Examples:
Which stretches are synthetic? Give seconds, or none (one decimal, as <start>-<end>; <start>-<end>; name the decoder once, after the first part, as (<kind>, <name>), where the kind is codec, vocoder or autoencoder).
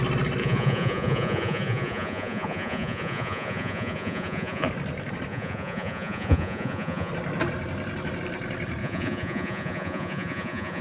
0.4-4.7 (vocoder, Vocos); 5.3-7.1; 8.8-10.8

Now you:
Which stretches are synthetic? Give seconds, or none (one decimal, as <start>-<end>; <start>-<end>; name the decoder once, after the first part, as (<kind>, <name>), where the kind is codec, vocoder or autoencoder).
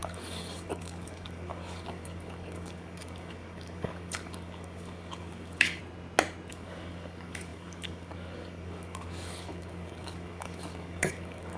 0.0-5.8 (codec, DAC); 6.5-11.6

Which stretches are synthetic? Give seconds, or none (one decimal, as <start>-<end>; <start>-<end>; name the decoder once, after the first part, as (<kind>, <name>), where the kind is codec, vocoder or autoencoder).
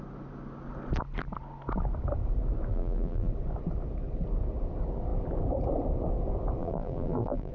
2.7-3.3 (vocoder, BigVGAN v2); 6.6-7.5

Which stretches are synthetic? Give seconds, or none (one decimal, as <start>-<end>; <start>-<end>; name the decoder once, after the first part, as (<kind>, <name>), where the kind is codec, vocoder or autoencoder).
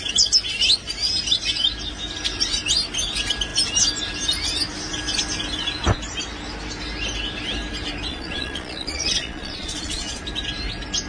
8.1-10.2 (vocoder, Vocos)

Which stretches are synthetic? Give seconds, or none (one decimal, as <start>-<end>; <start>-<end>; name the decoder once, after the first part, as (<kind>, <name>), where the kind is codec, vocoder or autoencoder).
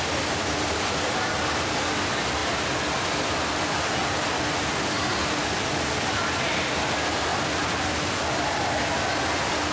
none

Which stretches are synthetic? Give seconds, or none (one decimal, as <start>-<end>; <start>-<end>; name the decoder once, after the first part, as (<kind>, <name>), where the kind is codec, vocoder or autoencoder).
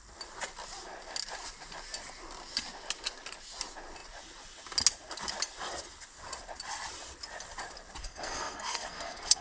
8.0-9.4 (codec, SNAC)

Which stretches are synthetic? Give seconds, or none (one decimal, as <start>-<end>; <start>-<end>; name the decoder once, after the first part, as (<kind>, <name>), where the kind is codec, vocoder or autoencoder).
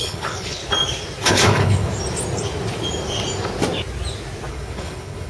0.0-0.6 (codec, HILCodec); 1.3-1.9; 4.5-5.3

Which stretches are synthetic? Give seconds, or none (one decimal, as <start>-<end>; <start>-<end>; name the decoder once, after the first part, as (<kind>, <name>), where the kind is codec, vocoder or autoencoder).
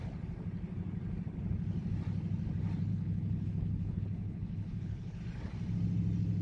2.9-5.2 (codec, HILCodec)